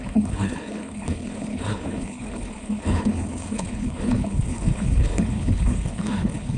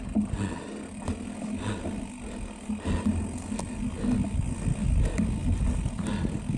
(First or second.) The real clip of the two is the second